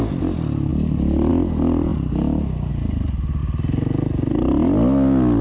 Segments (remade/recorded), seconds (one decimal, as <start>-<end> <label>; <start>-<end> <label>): 0.0-5.4 recorded